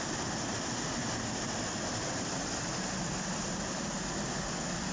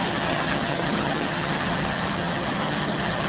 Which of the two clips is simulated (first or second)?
second